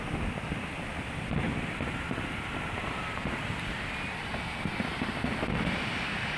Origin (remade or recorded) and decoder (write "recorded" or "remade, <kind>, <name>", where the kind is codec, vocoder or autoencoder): remade, vocoder, BigVGAN v2